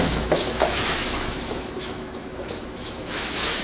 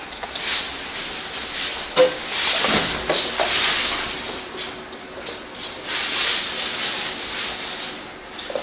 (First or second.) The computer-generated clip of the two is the first